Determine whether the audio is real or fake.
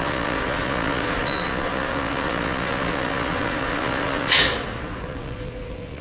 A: fake